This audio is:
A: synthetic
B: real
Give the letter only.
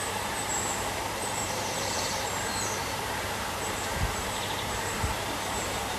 A